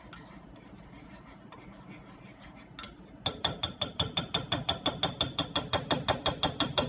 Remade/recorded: recorded